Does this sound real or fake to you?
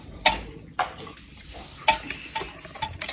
real